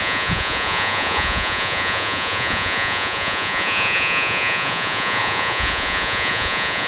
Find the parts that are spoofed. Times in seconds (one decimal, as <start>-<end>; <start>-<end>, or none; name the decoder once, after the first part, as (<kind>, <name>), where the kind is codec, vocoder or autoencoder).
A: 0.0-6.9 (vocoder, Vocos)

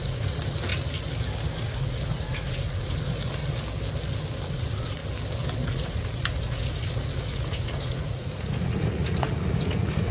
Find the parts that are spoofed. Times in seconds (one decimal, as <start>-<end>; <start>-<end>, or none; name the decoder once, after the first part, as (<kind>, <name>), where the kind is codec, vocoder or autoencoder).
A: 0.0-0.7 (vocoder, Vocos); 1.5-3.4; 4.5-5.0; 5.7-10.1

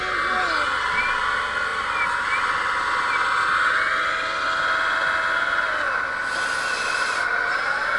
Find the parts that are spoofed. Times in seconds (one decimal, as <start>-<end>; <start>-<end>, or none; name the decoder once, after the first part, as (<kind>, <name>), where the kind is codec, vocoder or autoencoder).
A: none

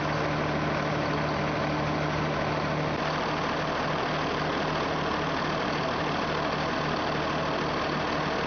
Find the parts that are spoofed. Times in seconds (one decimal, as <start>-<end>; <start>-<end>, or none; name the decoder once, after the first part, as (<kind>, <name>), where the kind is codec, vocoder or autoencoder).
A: none

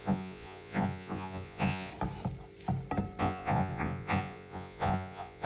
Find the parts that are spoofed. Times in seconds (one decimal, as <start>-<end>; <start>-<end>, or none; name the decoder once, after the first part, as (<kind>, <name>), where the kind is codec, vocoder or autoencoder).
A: 0.0-1.9 (vocoder, Vocos); 3.2-5.5

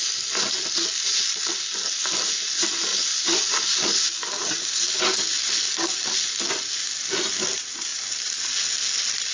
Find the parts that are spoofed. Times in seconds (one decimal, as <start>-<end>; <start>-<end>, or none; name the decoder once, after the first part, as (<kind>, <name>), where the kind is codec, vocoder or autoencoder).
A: none